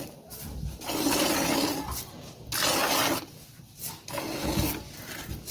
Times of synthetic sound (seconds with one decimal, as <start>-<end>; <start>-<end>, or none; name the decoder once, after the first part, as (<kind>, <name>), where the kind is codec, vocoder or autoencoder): none